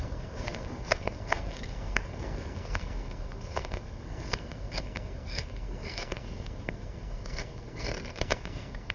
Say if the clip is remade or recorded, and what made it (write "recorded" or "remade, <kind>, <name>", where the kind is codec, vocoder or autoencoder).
remade, codec, SNAC